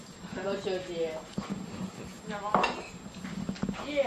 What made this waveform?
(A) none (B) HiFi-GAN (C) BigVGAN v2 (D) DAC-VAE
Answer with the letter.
A